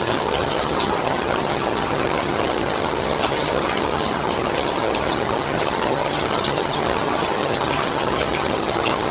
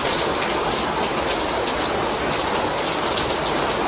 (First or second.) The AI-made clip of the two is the first